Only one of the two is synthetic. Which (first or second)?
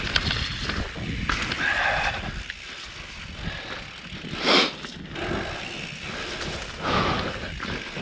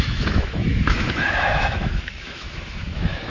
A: second